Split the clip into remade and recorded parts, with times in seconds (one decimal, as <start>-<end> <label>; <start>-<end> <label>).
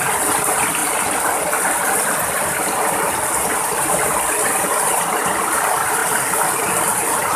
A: 0.0-7.4 recorded